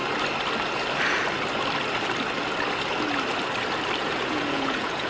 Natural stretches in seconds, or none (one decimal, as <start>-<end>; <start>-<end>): 0.0-4.0